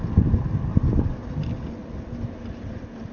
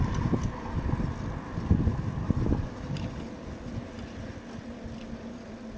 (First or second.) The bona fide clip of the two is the first